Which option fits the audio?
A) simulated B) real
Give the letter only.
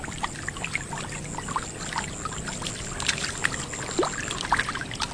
B